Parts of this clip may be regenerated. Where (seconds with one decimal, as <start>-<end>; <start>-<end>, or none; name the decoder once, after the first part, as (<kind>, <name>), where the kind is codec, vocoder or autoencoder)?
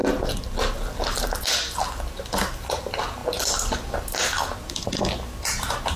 none